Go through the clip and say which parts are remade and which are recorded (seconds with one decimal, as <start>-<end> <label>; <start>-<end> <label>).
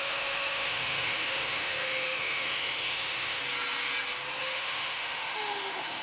0.0-3.4 remade; 3.4-4.4 recorded; 4.4-6.0 remade